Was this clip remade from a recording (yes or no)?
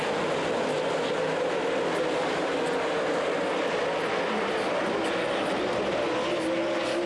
no